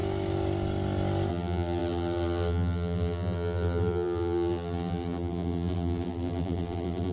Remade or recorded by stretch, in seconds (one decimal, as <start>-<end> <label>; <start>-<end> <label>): 0.0-1.3 recorded; 1.3-7.1 remade